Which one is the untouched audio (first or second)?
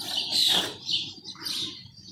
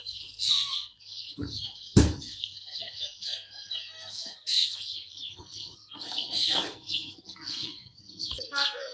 first